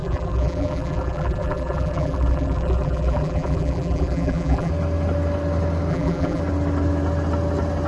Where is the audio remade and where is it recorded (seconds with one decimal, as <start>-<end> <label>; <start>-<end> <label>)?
0.0-4.7 remade; 4.7-5.9 recorded; 5.9-6.4 remade; 6.4-7.9 recorded